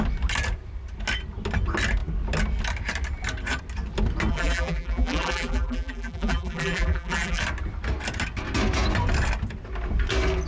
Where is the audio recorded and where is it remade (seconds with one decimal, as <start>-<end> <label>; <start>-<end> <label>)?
0.0-4.3 recorded; 4.3-7.4 remade; 7.4-10.5 recorded